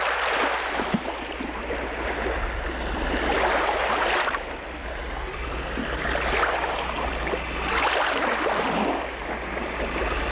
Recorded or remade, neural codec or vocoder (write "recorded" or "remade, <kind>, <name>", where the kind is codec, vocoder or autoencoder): recorded